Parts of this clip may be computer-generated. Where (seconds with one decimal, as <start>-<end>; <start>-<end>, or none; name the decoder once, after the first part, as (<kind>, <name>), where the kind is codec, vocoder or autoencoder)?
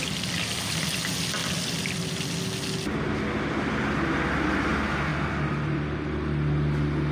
none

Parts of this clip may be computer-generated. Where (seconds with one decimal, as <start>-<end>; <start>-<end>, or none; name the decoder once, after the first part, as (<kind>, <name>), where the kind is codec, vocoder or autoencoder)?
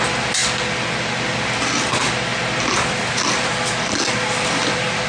none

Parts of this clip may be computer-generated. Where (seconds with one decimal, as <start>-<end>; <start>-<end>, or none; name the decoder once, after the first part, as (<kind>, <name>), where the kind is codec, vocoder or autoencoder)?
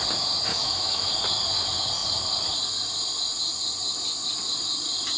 0.5-1.1 (autoencoder, DAC-VAE)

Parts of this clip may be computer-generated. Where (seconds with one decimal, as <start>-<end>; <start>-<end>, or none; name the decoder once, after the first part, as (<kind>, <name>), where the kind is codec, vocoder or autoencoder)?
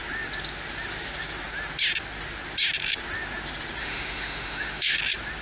3.8-5.0 (autoencoder, DAC-VAE)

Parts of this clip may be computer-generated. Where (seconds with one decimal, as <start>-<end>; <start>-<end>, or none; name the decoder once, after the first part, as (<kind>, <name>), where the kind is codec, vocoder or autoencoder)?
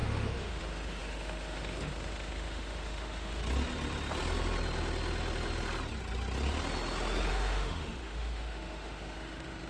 0.0-3.4 (autoencoder, DAC-VAE); 7.3-9.7